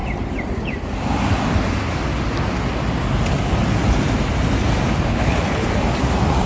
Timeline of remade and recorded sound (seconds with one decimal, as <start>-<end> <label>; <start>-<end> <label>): 0.0-5.1 recorded; 5.1-5.7 remade; 5.7-6.5 recorded